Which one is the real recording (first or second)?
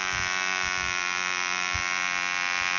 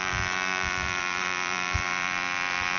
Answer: first